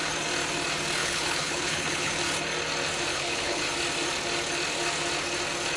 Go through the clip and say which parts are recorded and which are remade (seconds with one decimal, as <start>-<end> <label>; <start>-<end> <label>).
0.0-1.0 recorded; 1.0-2.1 remade; 2.1-3.1 recorded; 3.1-3.6 remade; 3.6-5.8 recorded